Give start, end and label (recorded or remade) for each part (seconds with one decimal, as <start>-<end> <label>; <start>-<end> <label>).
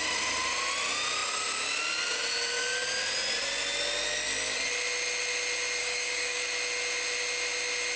0.0-5.8 recorded; 5.8-6.4 remade; 6.4-8.0 recorded